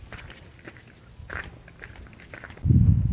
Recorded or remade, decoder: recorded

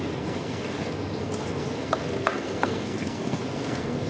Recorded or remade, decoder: remade, codec, SNAC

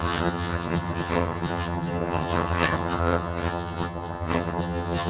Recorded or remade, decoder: remade, vocoder, HiFi-GAN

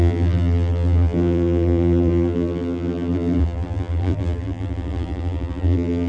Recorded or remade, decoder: remade, vocoder, BigVGAN v2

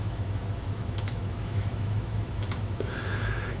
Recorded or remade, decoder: remade, autoencoder, DAC-VAE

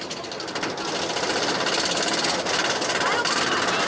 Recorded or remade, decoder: recorded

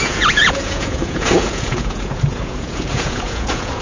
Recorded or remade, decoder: remade, vocoder, Vocos